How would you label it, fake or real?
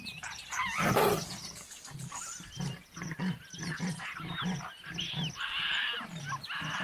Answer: real